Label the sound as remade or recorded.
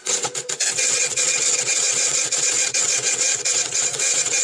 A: remade